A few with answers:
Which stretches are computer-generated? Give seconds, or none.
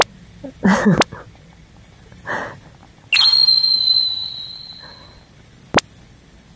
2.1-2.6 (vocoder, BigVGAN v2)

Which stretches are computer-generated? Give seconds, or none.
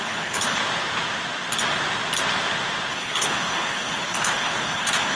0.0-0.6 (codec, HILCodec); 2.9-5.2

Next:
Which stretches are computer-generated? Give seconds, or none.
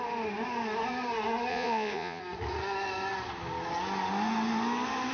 1.5-2.2 (vocoder, Vocos)